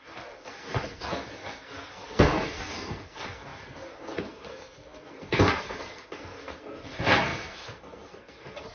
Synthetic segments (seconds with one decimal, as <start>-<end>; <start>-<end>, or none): 0.0-8.7